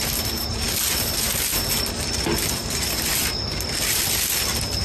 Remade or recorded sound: recorded